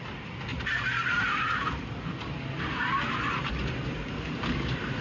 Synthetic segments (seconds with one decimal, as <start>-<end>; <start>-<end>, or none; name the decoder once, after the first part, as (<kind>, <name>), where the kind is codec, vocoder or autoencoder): none